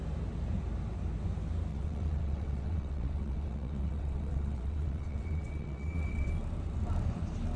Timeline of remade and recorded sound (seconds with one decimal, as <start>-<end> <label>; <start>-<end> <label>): 0.0-1.7 recorded; 1.7-6.3 remade; 6.3-7.6 recorded